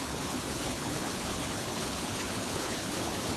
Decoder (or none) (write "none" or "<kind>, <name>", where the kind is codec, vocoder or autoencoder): codec, HILCodec